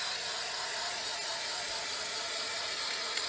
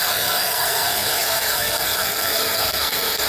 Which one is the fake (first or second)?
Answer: second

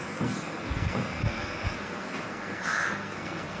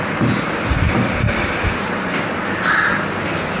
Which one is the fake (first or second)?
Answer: first